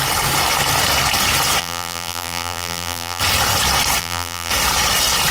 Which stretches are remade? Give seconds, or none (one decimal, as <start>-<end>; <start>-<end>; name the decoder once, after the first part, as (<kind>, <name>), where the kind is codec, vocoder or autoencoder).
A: 1.6-3.2 (vocoder, BigVGAN v2); 4.0-4.5